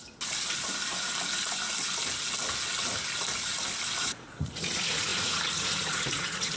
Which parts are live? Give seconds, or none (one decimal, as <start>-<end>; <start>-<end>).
0.0-4.0